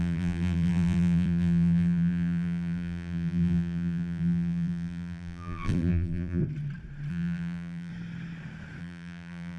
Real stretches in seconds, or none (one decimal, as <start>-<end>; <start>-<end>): 6.4-7.1; 7.9-8.8